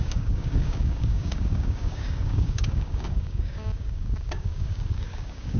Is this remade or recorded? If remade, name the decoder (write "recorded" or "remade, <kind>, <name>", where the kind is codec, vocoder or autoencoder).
remade, codec, DAC